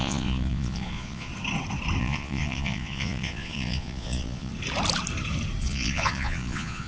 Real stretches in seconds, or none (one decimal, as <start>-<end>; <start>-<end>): 1.3-2.0; 4.5-5.6